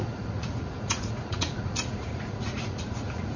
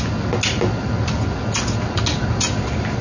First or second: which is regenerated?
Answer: first